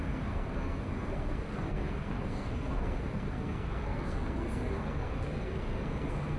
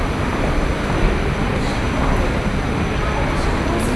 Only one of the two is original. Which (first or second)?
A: second